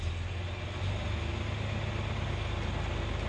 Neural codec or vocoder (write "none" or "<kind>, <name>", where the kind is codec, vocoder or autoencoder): none